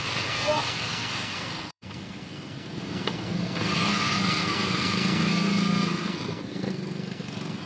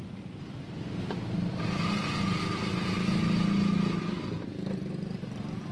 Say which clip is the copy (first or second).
first